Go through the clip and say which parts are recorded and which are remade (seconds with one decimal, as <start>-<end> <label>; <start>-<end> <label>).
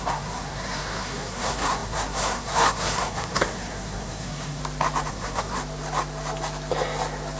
0.0-4.6 remade; 4.6-5.1 recorded; 5.1-5.6 remade; 5.6-7.4 recorded